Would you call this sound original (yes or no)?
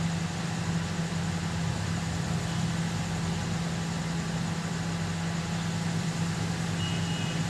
yes